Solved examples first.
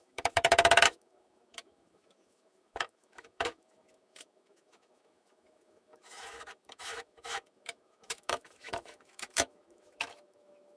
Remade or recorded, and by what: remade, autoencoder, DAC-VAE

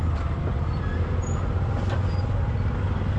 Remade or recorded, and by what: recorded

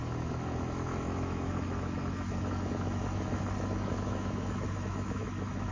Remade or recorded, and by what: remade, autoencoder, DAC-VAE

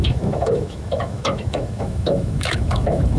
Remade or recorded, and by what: remade, autoencoder, DAC-VAE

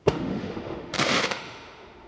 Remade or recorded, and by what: remade, autoencoder, DAC-VAE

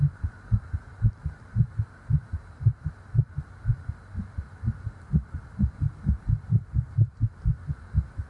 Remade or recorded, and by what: recorded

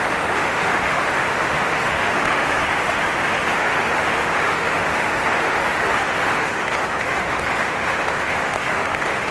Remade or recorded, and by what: remade, autoencoder, DAC-VAE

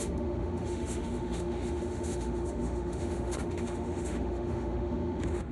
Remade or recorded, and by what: remade, autoencoder, DAC-VAE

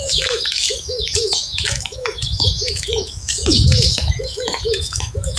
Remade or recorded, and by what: remade, autoencoder, DAC-VAE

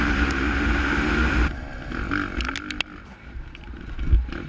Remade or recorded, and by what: recorded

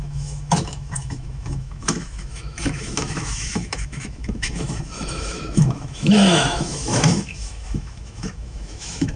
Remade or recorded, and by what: remade, autoencoder, DAC-VAE